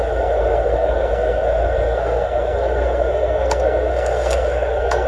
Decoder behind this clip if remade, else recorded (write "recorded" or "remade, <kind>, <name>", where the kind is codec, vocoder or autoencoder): remade, codec, SNAC